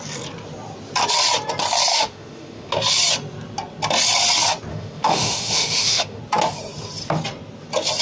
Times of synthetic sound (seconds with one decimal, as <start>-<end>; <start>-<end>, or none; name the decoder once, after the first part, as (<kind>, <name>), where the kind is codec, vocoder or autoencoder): 1.9-2.7 (autoencoder, DAC-VAE); 4.7-6.2